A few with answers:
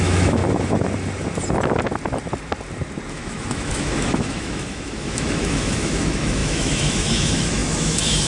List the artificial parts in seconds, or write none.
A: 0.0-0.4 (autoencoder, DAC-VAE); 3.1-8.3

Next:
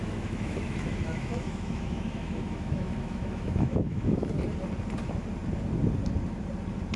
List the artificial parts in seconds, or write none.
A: 0.0-4.2 (autoencoder, DAC-VAE)

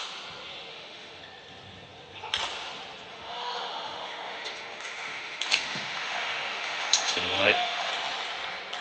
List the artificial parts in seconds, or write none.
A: 0.7-1.2 (autoencoder, DAC-VAE); 3.1-7.9

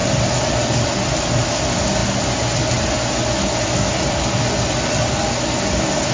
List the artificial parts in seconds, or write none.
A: none

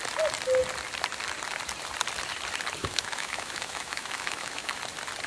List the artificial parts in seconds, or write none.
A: 2.8-4.8 (autoencoder, DAC-VAE)

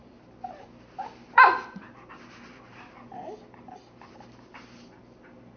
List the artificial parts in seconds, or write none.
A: none